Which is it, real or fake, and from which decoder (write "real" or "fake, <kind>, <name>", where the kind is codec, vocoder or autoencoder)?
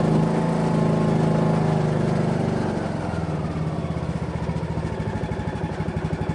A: real